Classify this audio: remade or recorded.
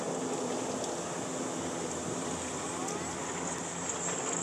recorded